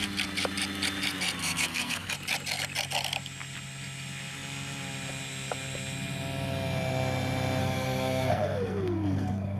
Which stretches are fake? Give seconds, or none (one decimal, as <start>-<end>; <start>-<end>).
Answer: 1.4-2.1; 7.6-9.6